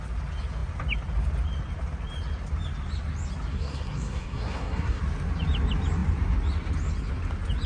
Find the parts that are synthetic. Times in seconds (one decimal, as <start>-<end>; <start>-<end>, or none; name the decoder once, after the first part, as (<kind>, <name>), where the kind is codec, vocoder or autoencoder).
3.5-5.0 (codec, SNAC)